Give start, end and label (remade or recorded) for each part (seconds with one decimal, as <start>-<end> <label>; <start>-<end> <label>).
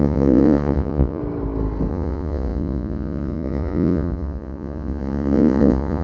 0.0-1.2 remade; 1.2-1.9 recorded; 1.9-6.0 remade